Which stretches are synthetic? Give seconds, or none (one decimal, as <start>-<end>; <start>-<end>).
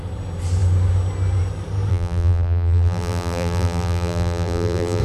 1.9-5.0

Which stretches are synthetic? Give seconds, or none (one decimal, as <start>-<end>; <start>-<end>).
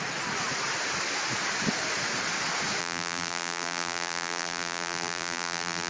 2.8-5.9